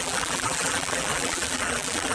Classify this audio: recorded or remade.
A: remade